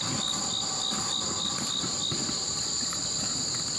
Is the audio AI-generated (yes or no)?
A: no